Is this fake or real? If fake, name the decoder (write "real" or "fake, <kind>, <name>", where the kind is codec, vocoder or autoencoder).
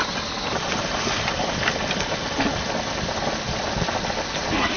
real